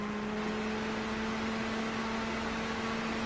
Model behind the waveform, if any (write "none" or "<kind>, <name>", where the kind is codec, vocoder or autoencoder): none